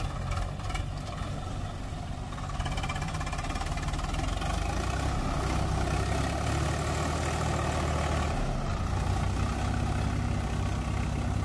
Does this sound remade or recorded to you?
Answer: recorded